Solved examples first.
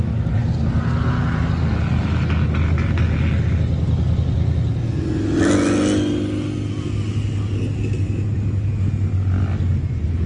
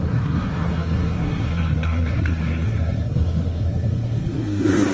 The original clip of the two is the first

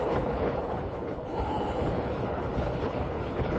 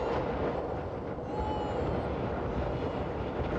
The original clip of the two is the second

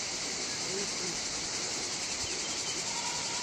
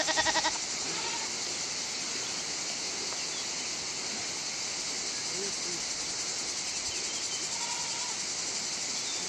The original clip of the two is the second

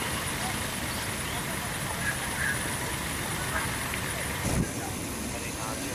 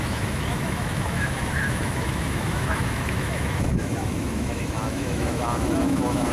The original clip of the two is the first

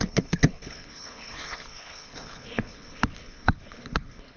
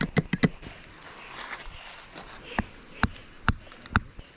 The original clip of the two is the second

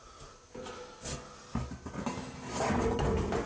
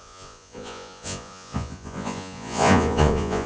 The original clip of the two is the first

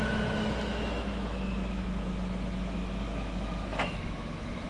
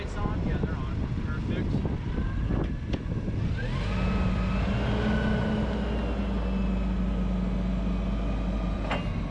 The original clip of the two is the second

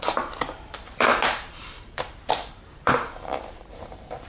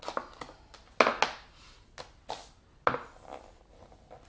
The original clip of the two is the second